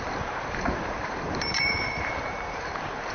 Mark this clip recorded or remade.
remade